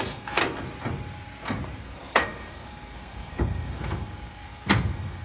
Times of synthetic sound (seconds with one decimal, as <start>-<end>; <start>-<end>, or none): 0.0-0.4; 1.8-5.2